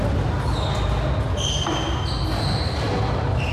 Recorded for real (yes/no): yes